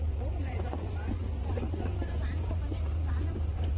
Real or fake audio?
fake